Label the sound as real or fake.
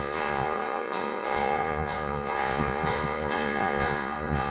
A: fake